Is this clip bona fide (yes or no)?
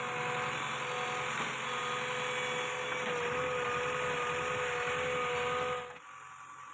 yes